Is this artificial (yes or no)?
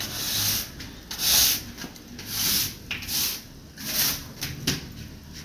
no